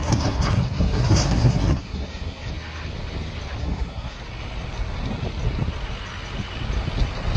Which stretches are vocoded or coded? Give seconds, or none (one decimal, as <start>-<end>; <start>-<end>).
0.0-2.5; 3.6-4.2